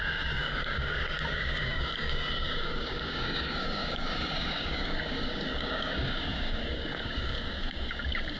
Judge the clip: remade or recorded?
remade